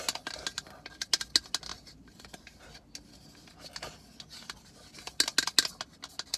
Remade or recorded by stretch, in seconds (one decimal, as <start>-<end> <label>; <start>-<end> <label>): 0.0-1.7 recorded; 1.7-2.6 remade; 2.6-6.4 recorded